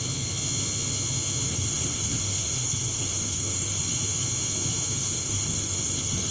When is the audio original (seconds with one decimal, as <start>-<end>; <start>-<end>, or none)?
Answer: 0.0-1.5; 3.8-5.0